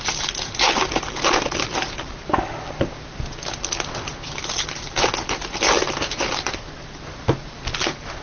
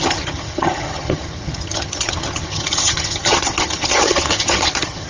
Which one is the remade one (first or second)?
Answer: second